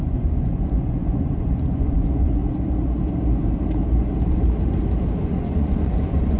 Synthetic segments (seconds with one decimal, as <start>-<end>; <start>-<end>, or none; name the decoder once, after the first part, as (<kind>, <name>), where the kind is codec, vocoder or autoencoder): 0.0-2.4 (vocoder, Vocos); 5.2-6.4